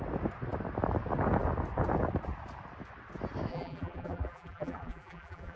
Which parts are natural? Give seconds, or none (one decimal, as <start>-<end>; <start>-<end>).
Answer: 0.0-3.5